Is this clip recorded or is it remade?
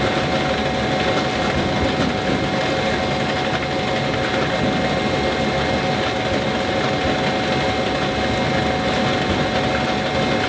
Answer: recorded